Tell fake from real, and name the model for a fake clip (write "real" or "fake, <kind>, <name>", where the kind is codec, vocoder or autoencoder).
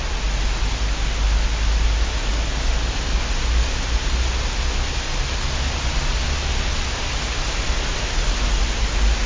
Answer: real